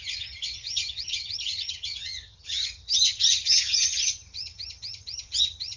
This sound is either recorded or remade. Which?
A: remade